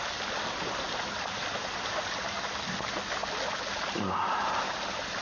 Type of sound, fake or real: real